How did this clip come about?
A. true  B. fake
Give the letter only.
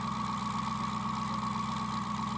A